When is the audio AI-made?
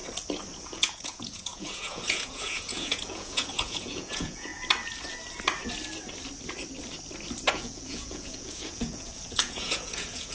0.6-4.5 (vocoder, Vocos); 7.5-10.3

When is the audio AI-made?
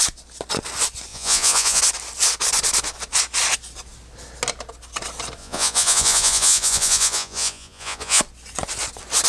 1.1-1.8 (vocoder, Vocos); 5.4-8.2